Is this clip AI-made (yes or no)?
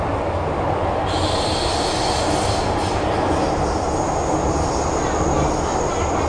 no